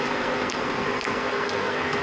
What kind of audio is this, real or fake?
fake